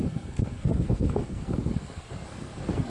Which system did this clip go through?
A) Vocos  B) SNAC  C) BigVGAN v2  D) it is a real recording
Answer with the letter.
B